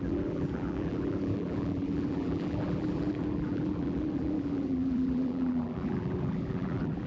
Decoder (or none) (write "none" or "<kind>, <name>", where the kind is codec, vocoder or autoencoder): vocoder, BigVGAN v2